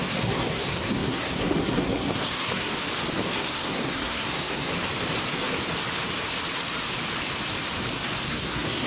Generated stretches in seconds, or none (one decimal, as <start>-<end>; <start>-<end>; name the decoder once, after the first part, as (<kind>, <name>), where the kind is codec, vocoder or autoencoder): 0.0-2.7 (codec, SNAC); 3.3-4.7; 8.3-8.9